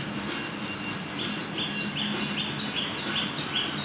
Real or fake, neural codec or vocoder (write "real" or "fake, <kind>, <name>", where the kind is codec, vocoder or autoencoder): real